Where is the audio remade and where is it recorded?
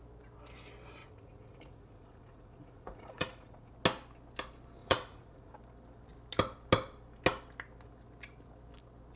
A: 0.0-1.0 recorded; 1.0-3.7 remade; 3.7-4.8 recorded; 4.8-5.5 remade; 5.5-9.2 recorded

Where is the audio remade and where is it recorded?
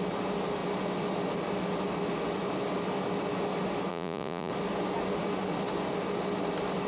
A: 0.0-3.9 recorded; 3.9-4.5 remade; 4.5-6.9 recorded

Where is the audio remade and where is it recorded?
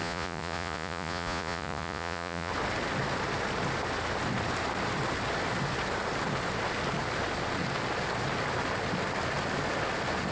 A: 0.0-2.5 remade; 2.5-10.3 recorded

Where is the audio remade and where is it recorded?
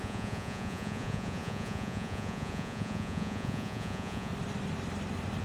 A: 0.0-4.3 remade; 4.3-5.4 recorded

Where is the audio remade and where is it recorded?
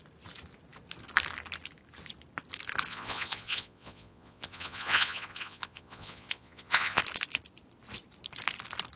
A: 0.0-2.9 recorded; 2.9-7.0 remade; 7.0-9.0 recorded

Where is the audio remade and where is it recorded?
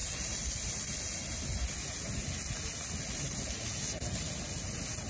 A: 0.0-5.1 recorded